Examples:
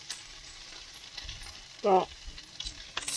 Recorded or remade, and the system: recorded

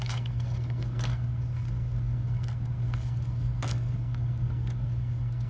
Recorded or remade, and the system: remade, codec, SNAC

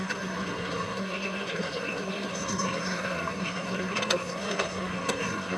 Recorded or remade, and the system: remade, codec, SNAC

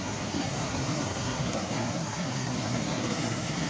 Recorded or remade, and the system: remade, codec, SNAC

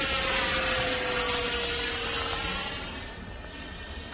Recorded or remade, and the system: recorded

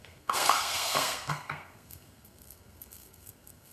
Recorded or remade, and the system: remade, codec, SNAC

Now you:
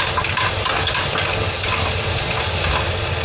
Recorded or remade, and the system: recorded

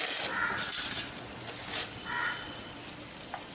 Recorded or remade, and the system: recorded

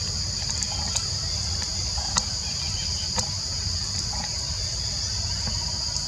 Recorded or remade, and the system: recorded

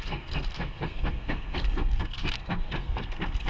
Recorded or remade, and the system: remade, codec, SNAC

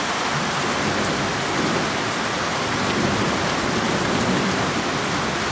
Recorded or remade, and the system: recorded